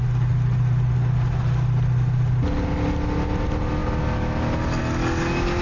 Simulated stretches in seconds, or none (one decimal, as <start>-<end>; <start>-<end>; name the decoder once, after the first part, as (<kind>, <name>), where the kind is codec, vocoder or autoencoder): none